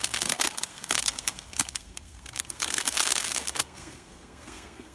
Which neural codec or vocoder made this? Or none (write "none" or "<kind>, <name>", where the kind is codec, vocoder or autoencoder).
codec, SNAC